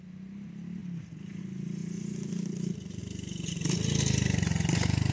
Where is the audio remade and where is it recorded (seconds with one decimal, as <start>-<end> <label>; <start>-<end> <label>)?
0.0-5.1 recorded